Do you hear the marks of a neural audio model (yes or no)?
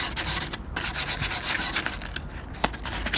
no